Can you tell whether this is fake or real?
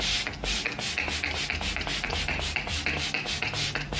real